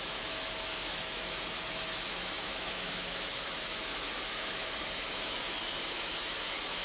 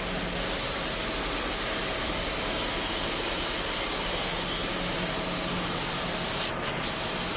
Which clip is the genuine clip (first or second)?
second